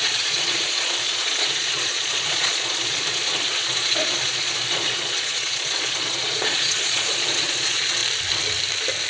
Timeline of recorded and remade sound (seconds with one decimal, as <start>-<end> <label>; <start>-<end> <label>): 0.0-8.0 remade; 8.0-9.1 recorded